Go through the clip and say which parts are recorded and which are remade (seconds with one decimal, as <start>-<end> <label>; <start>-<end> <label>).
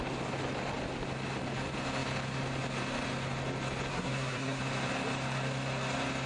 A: 0.0-3.9 recorded; 3.9-4.6 remade; 4.6-6.3 recorded